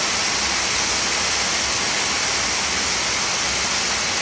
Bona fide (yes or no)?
yes